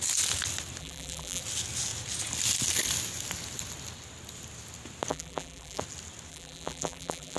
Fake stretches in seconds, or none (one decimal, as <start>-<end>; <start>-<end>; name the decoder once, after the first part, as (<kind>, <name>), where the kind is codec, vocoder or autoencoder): 0.8-1.4 (vocoder, BigVGAN v2); 5.1-5.8; 6.3-7.4